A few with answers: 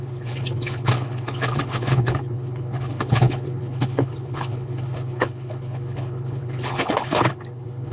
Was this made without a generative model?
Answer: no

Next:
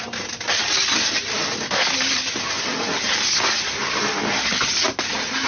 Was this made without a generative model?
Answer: yes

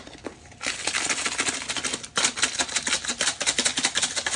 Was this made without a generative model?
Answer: yes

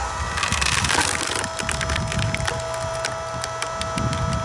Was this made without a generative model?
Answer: yes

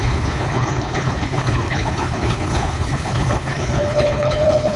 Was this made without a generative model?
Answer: no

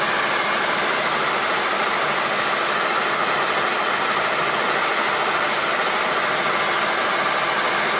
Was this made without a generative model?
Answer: yes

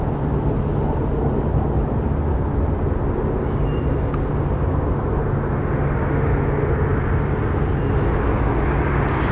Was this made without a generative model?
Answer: yes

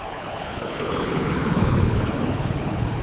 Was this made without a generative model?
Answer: no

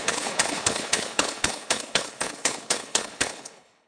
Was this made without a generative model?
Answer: no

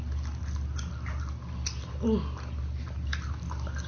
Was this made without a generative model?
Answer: yes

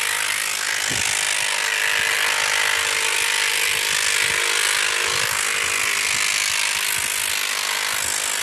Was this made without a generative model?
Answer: yes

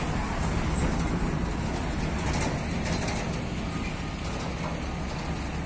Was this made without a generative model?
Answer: yes